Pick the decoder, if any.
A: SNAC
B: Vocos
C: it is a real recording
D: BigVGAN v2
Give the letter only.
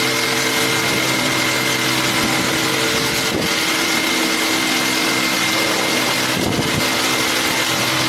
C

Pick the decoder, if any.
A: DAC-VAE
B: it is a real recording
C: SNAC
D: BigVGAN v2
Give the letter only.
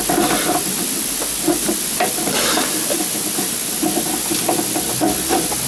B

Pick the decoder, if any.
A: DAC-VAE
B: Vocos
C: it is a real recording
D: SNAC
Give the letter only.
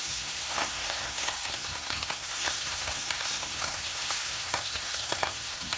D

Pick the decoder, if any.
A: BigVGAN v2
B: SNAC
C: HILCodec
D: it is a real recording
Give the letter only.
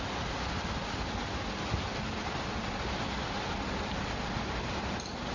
D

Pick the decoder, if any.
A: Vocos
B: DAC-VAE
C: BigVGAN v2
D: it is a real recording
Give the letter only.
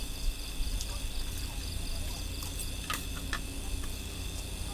D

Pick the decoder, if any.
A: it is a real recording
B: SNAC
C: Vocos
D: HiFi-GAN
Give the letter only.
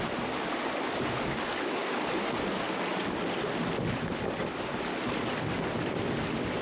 A